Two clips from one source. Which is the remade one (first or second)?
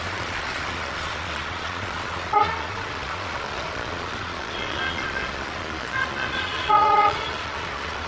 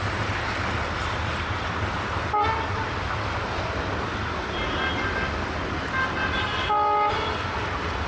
first